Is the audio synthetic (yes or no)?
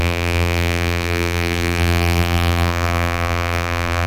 yes